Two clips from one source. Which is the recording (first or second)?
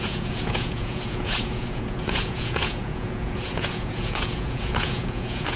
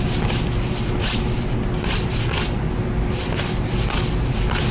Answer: second